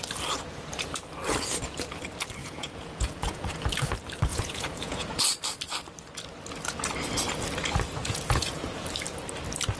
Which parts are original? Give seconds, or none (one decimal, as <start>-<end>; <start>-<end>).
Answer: 0.0-2.4; 3.6-4.3; 5.2-8.0; 8.7-9.8